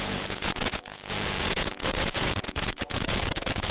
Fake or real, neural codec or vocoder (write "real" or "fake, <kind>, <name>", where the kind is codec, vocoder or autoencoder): fake, vocoder, Vocos